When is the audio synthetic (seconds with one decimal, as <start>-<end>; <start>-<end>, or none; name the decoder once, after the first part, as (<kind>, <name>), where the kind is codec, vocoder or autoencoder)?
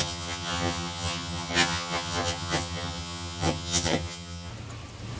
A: 0.0-4.5 (vocoder, HiFi-GAN)